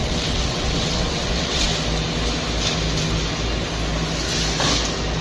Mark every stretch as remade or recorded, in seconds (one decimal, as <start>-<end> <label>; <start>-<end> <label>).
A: 0.0-1.7 remade; 1.7-5.2 recorded